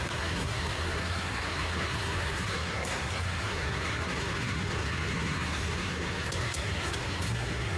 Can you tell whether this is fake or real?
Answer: fake